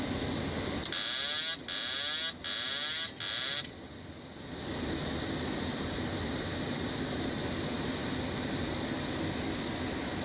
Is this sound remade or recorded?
recorded